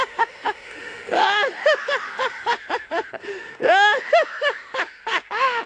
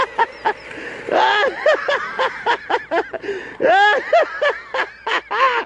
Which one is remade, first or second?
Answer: first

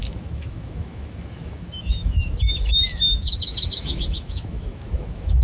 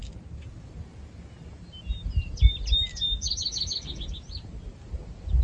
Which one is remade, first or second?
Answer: first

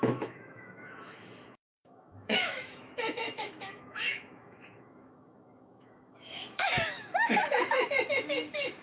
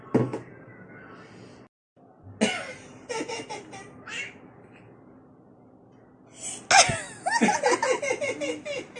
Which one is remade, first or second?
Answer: first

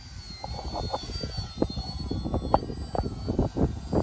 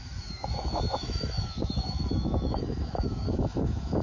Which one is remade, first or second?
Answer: second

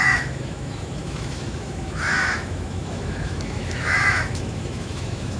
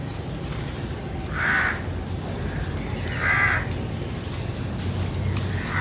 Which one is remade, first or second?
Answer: first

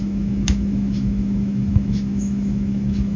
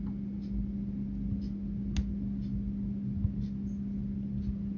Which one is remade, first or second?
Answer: first